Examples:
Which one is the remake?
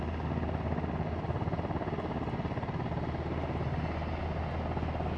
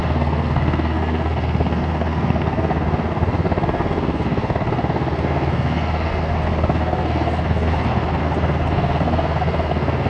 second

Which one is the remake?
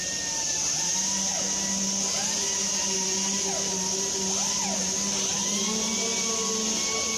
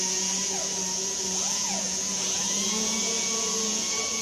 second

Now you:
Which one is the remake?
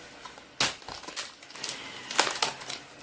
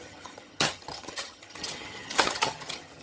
second